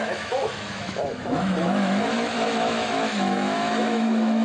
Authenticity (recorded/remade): remade